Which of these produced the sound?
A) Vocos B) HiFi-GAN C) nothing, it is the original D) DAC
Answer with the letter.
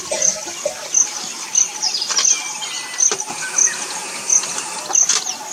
C